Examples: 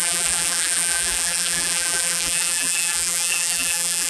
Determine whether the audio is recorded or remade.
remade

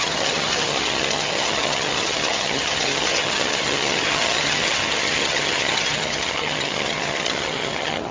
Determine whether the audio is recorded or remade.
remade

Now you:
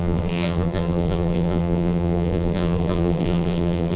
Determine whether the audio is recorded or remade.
remade